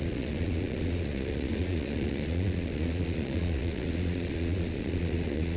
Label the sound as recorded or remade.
remade